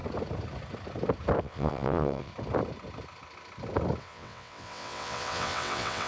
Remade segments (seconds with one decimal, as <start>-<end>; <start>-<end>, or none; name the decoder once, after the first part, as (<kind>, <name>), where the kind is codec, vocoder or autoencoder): 1.4-2.3 (vocoder, WaveNeXt); 4.0-6.1